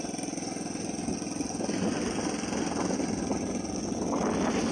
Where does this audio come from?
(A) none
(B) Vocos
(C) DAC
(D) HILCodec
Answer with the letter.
A